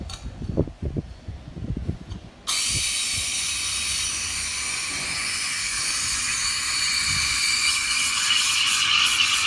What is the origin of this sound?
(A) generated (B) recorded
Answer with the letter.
A